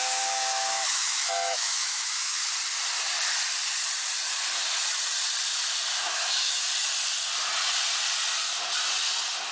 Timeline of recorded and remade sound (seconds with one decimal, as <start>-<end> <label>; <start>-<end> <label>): 0.0-2.5 remade; 2.5-5.9 recorded; 5.9-6.6 remade; 6.6-9.5 recorded

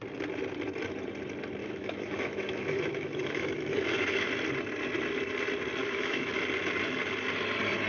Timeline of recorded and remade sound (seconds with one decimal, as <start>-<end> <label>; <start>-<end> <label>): 0.0-1.6 recorded; 1.6-4.3 remade; 4.3-5.8 recorded; 5.8-6.3 remade; 6.3-7.9 recorded

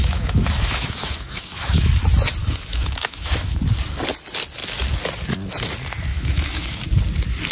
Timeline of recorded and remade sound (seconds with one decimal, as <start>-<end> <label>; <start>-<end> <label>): 0.0-1.9 remade; 1.9-2.4 recorded; 2.4-3.6 remade; 3.6-6.1 recorded; 6.1-6.8 remade; 6.8-7.5 recorded

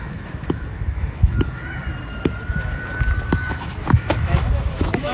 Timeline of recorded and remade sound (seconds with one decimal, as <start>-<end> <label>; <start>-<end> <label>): 0.0-1.6 remade; 1.6-3.5 recorded; 3.5-5.1 remade

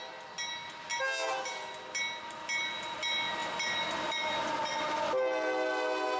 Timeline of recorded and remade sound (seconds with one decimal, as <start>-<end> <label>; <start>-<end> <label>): 0.0-6.2 recorded

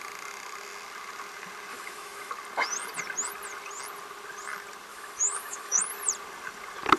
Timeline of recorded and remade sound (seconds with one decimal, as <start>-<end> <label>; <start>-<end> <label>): 0.0-1.7 recorded; 1.7-2.3 remade; 2.3-4.9 recorded; 4.9-5.8 remade; 5.8-7.0 recorded

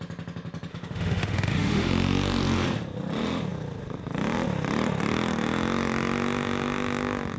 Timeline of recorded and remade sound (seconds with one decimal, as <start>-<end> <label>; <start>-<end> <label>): 0.0-0.7 recorded; 0.7-1.9 remade; 1.9-7.4 recorded

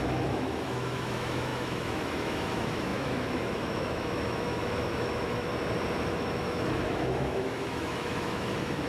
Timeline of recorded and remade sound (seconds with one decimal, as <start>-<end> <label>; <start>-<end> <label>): 0.0-5.5 remade; 5.5-6.1 recorded; 6.1-8.9 remade